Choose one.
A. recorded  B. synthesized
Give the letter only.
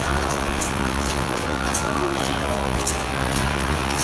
B